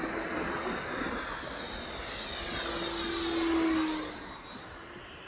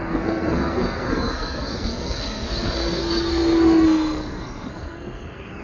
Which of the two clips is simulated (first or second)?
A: second